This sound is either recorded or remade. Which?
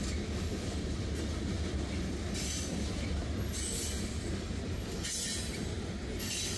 recorded